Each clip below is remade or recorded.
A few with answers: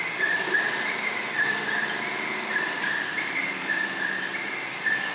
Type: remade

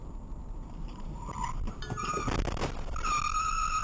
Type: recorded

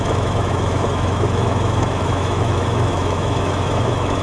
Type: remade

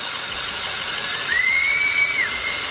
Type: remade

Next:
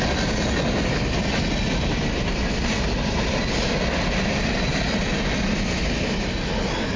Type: recorded